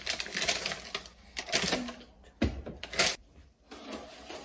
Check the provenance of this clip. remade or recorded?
recorded